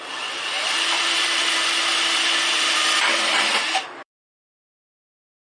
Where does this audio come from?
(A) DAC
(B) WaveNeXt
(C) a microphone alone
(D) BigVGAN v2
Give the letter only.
D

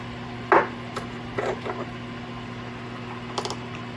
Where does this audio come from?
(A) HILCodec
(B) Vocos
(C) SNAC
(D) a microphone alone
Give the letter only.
D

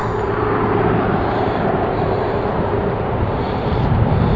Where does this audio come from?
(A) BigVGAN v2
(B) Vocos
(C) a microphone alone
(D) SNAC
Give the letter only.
A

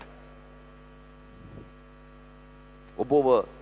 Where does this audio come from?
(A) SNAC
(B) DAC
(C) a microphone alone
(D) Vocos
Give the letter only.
C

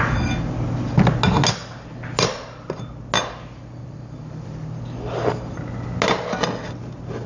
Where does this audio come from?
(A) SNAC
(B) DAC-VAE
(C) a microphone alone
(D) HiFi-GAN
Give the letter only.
C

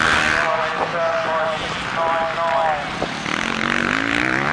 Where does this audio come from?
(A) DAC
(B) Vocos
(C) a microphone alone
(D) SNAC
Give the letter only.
C